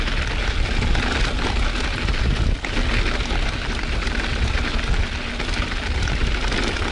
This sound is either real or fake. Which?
real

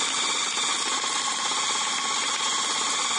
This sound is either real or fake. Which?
real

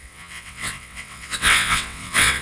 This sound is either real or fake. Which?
fake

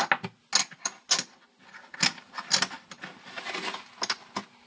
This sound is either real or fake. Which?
real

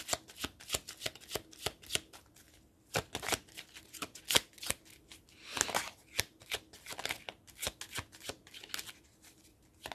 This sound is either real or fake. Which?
real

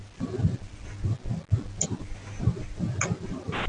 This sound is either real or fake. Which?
real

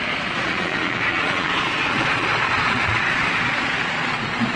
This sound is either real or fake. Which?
fake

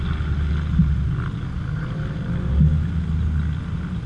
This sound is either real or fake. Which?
real